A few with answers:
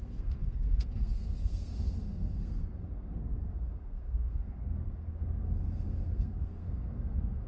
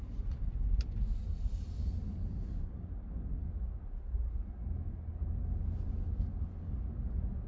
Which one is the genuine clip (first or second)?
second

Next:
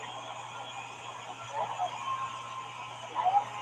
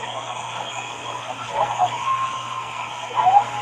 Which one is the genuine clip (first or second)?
first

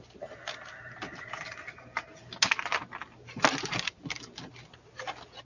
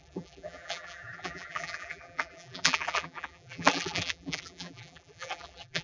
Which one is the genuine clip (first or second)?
first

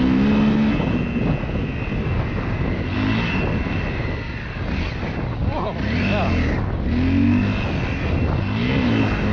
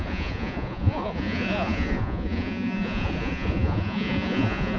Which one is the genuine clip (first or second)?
first